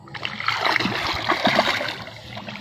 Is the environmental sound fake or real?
real